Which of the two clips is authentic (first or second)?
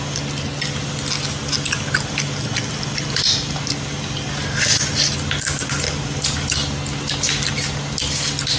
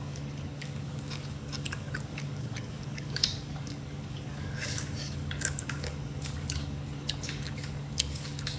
first